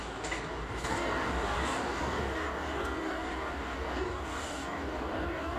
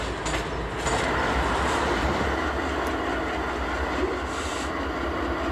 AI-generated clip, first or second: first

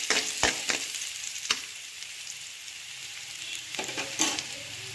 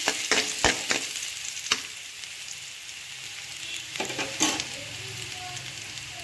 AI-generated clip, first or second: first